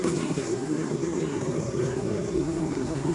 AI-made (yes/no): yes